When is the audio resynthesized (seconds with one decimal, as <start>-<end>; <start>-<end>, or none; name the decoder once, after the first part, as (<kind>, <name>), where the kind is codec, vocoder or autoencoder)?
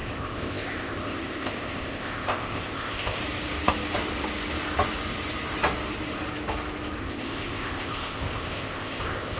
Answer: 0.0-3.2 (codec, ZipCodec); 7.0-9.4